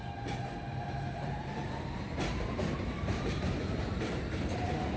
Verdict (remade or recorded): remade